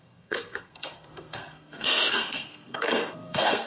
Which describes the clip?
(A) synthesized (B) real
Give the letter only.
A